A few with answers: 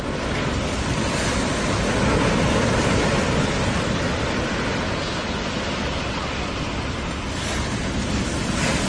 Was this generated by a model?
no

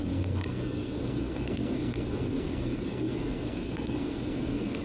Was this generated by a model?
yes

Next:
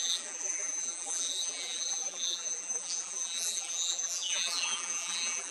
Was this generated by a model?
yes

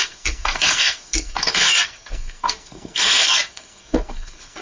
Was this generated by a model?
yes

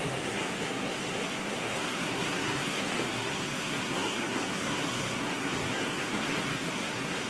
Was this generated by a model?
yes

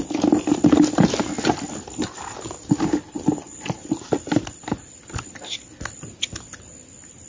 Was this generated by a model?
no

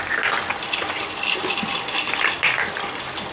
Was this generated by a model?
no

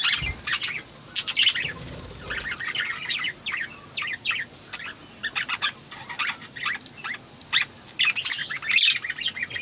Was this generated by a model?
no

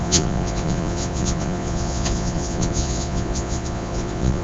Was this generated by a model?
yes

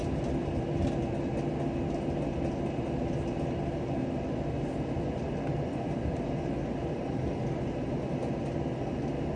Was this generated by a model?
no